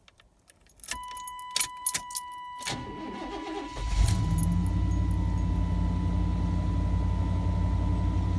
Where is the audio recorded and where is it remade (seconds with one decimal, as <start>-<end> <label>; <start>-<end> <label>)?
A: 0.0-8.4 recorded